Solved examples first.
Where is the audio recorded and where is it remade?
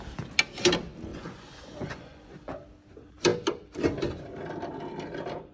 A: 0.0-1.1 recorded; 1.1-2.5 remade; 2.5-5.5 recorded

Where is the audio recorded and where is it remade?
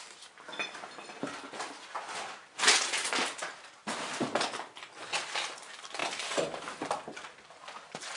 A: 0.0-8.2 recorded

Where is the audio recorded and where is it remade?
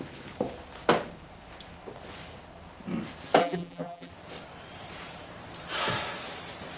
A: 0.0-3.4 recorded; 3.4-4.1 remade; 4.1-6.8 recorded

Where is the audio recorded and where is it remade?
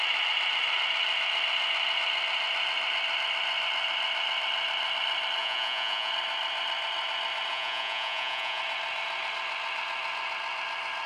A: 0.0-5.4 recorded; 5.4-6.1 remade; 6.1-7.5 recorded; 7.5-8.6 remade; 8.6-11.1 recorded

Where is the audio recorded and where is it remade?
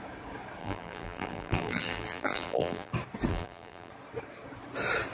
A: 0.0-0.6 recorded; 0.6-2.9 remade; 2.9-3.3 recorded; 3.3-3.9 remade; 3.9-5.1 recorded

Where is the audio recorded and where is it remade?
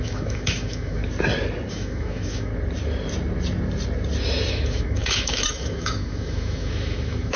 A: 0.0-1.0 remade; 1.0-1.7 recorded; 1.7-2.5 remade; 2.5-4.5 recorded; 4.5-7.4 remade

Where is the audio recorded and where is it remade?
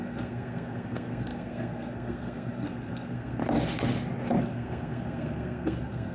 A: 0.0-3.4 remade; 3.4-4.4 recorded; 4.4-6.1 remade